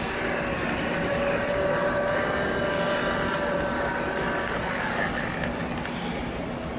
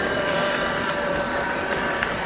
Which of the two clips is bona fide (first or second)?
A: first